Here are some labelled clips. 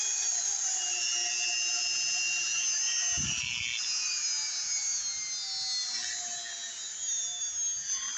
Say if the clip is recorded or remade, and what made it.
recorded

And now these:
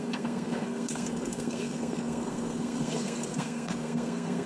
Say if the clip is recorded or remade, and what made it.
remade, codec, SNAC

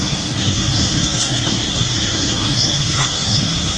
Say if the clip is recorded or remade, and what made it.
remade, codec, SNAC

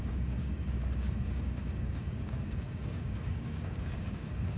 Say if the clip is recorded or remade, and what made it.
remade, codec, DAC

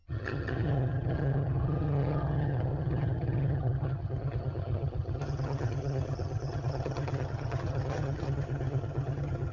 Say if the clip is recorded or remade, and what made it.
remade, vocoder, HiFi-GAN